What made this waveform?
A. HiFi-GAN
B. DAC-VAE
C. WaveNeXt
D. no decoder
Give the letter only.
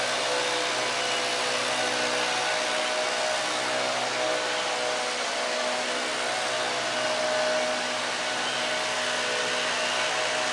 D